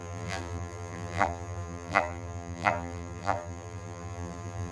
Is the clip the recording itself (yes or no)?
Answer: no